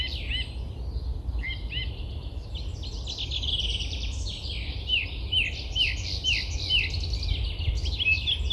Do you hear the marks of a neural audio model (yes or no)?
no